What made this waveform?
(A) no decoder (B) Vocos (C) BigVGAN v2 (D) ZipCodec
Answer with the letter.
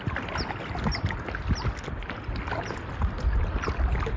A